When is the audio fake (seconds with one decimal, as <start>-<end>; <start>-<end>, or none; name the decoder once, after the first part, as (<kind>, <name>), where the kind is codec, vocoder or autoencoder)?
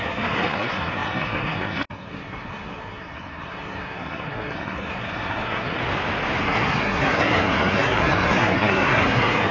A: 0.0-5.8 (codec, SNAC); 6.4-9.5